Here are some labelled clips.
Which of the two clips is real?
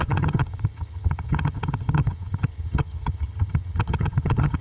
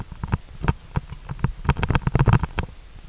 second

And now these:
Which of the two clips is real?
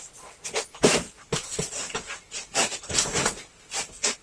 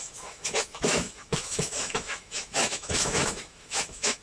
first